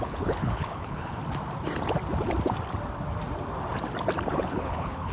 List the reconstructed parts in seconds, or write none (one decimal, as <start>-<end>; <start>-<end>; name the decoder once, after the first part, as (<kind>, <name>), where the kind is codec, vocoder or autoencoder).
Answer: 0.0-1.2 (codec, HILCodec); 4.3-5.1